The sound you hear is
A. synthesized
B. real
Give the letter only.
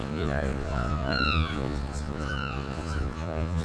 A